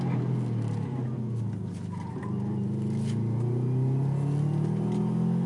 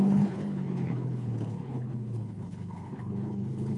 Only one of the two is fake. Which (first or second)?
second